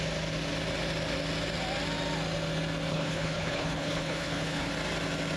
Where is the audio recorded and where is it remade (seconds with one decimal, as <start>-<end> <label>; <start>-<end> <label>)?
0.0-2.9 recorded; 2.9-4.7 remade; 4.7-5.4 recorded